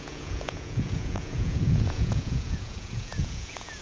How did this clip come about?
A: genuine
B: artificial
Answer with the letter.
B